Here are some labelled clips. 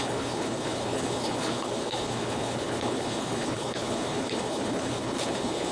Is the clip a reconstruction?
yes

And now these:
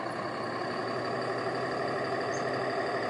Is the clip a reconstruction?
no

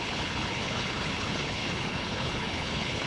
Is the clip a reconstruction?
yes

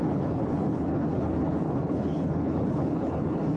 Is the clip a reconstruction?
yes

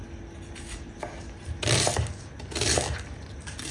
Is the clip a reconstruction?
no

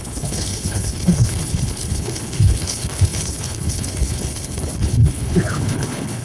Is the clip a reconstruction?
yes